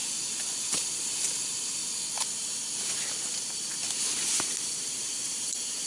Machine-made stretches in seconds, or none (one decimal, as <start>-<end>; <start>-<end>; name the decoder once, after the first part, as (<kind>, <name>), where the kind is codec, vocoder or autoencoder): 1.0-1.8 (vocoder, BigVGAN v2); 4.7-5.9